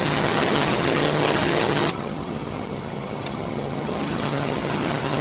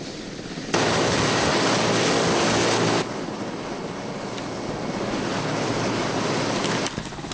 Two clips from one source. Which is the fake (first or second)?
first